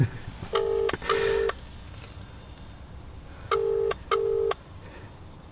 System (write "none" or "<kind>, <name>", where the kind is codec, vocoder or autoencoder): none